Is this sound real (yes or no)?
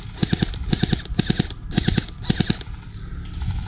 yes